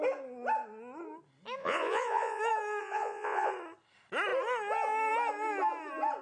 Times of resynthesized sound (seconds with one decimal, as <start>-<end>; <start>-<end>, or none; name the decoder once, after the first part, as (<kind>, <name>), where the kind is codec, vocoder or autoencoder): 1.6-2.4 (vocoder, Vocos); 2.8-3.5